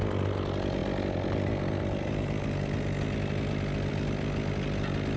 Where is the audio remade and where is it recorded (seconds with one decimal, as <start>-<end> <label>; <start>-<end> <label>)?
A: 0.0-5.2 recorded